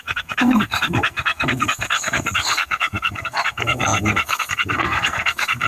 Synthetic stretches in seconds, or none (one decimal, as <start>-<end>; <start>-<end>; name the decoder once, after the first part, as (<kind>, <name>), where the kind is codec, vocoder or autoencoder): 0.0-5.7 (codec, SNAC)